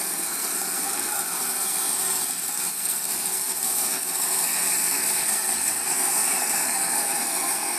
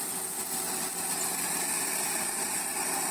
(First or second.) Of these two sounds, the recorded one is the second